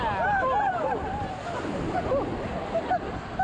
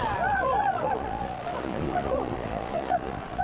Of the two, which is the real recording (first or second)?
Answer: first